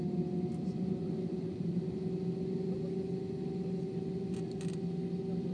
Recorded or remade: recorded